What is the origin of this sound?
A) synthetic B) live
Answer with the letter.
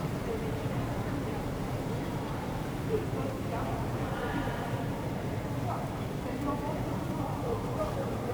A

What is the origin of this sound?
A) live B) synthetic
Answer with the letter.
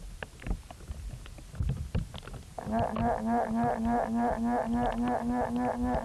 A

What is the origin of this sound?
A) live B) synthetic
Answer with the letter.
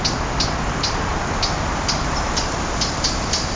A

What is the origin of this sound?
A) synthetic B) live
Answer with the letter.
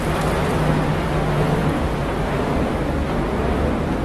B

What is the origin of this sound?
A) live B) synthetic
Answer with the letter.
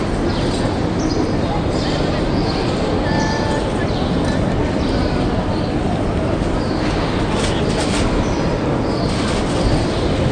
A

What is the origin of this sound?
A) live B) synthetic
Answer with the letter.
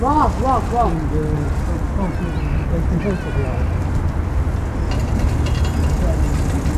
A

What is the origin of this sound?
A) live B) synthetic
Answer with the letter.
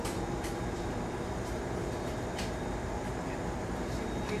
B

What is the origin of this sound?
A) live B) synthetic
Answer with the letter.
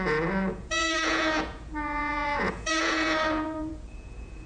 B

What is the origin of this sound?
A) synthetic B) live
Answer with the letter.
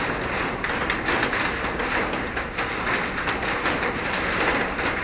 B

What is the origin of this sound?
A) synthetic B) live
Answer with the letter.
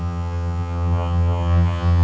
A